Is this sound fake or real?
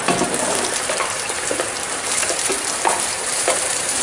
fake